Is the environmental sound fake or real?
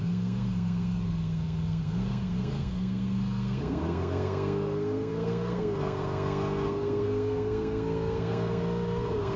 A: fake